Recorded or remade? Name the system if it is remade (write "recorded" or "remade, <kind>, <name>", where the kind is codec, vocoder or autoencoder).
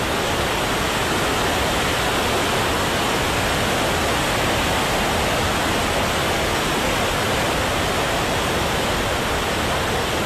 recorded